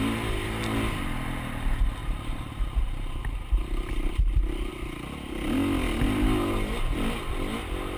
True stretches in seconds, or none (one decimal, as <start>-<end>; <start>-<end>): 0.0-2.0; 4.7-8.0